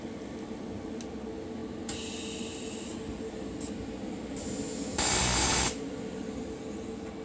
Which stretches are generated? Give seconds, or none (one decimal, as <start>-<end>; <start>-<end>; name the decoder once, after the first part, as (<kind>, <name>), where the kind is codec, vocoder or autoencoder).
none